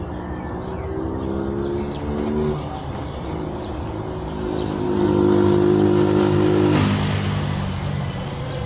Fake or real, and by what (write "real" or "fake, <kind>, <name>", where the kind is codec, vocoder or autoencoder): real